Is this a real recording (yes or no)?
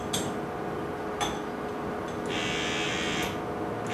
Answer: yes